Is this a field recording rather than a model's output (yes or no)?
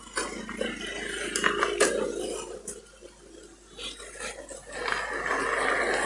yes